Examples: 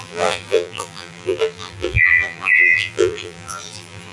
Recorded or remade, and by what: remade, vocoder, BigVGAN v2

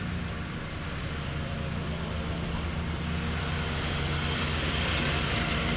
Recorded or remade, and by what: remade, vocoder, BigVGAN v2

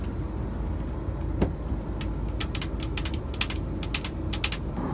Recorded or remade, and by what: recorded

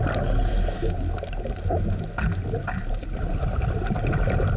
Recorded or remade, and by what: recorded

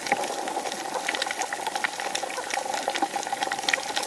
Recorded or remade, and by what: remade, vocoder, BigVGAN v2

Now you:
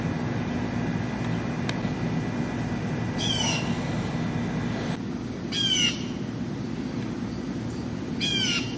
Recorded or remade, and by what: recorded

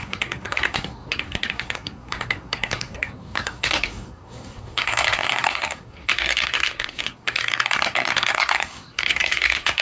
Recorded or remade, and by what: remade, codec, SNAC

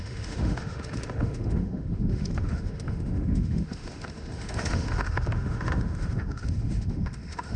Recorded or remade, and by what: remade, autoencoder, DAC-VAE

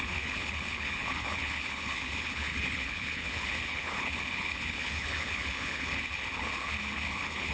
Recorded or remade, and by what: remade, codec, HILCodec